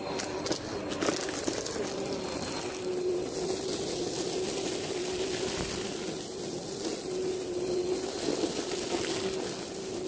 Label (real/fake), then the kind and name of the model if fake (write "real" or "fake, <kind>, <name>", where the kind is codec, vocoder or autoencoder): real